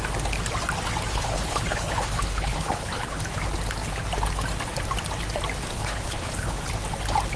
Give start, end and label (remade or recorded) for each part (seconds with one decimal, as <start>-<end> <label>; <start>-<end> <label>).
0.0-1.1 recorded; 1.1-3.2 remade; 3.2-5.7 recorded; 5.7-6.6 remade; 6.6-7.4 recorded